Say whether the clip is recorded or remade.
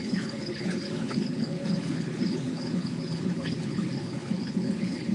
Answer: remade